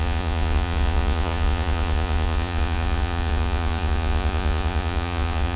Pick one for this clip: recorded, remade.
remade